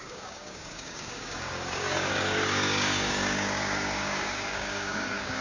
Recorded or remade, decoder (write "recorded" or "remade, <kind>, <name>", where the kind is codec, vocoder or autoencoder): remade, codec, DAC